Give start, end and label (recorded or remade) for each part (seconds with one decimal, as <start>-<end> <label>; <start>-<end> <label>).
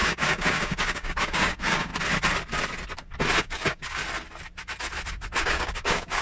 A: 0.0-1.9 remade; 1.9-3.4 recorded; 3.4-4.0 remade; 4.0-5.4 recorded; 5.4-6.2 remade